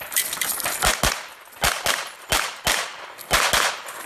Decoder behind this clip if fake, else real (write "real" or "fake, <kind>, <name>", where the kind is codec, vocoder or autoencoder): real